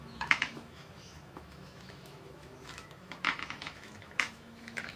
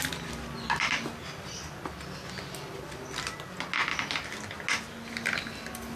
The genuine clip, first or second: second